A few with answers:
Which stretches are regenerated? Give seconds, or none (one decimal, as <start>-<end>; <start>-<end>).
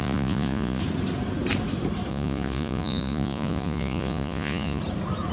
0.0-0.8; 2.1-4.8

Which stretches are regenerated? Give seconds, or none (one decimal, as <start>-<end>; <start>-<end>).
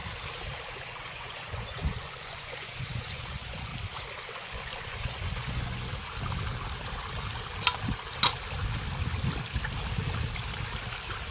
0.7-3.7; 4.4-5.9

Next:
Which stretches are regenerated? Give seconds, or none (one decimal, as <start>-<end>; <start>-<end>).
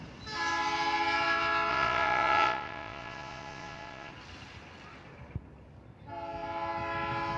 1.7-4.1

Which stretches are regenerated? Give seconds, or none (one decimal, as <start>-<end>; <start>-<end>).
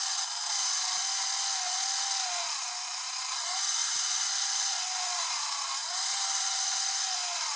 3.8-4.3